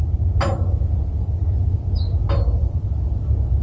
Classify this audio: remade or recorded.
recorded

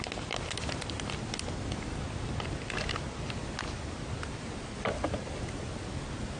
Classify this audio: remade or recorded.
recorded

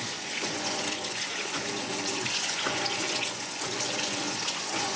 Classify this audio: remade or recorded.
remade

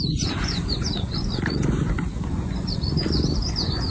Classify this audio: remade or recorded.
remade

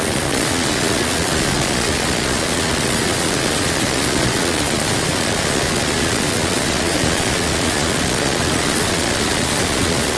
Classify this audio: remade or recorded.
remade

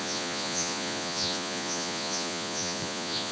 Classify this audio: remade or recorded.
remade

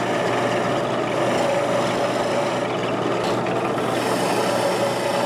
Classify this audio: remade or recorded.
recorded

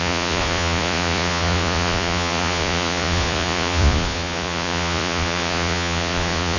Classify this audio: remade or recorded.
remade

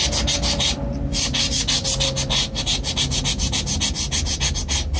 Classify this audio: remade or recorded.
recorded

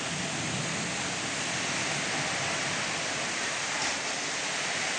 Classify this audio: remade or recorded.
recorded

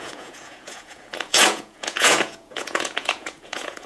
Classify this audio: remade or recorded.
remade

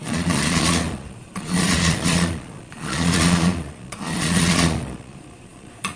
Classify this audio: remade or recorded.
remade